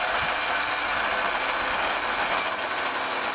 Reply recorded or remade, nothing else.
recorded